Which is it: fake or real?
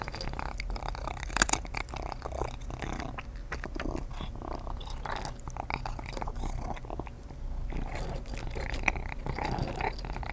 real